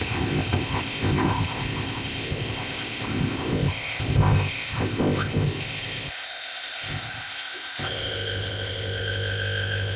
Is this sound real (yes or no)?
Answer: no